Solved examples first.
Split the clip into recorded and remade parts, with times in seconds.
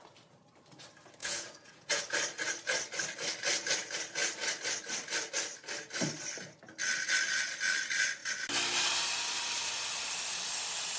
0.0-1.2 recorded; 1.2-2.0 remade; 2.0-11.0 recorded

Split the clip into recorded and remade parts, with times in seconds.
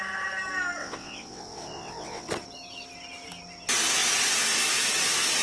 0.0-0.8 recorded; 0.8-2.3 remade; 2.3-5.4 recorded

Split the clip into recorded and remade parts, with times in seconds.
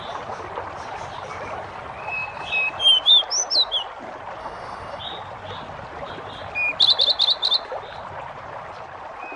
0.0-4.4 recorded; 4.4-5.0 remade; 5.0-9.4 recorded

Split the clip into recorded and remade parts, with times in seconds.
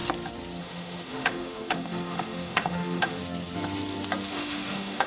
0.0-0.6 recorded; 0.6-3.2 remade; 3.2-4.3 recorded; 4.3-5.1 remade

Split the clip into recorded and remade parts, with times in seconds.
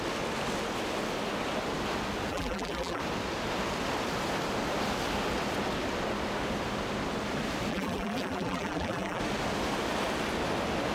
0.0-2.3 recorded; 2.3-3.0 remade; 3.0-7.7 recorded; 7.7-9.2 remade; 9.2-10.9 recorded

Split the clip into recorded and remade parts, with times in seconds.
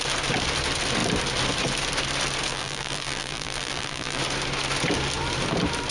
0.0-2.5 recorded; 2.5-4.2 remade; 4.2-5.9 recorded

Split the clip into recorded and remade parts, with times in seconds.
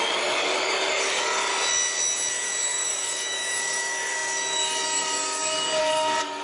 0.0-1.5 remade; 1.5-2.3 recorded; 2.3-6.4 remade